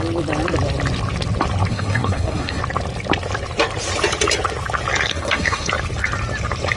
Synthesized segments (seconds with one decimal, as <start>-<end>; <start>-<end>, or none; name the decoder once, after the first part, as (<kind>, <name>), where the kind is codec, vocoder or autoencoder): 1.7-2.6 (codec, SNAC); 5.1-5.7